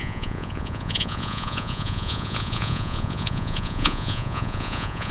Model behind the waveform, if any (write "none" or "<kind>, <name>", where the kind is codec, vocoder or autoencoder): vocoder, Vocos